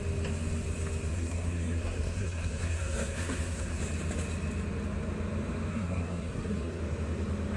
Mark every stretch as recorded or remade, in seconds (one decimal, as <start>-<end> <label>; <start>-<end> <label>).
0.0-1.1 recorded; 1.1-3.8 remade; 3.8-5.7 recorded; 5.7-6.8 remade; 6.8-7.6 recorded

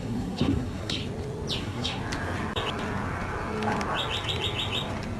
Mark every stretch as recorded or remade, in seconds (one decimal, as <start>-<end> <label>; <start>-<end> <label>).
0.0-1.0 remade; 1.0-1.6 recorded; 1.6-2.0 remade; 2.0-5.2 recorded

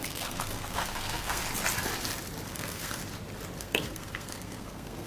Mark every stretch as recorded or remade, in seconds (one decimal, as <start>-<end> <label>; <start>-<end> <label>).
0.0-1.4 remade; 1.4-2.5 recorded; 2.5-3.0 remade; 3.0-3.6 recorded; 3.6-5.1 remade

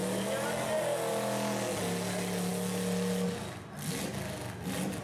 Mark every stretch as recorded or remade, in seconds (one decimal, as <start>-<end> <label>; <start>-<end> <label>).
0.0-5.0 recorded

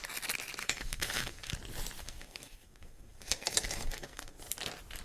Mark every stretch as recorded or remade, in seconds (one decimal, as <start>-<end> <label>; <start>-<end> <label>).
0.0-0.6 recorded; 0.6-1.5 remade; 1.5-2.0 recorded; 2.0-4.4 remade; 4.4-5.0 recorded